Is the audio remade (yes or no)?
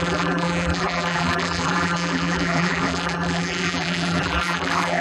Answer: yes